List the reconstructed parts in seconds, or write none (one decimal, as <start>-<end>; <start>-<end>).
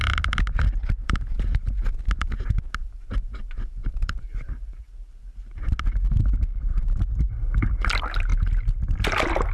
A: 1.0-2.0; 3.8-4.9; 6.5-7.3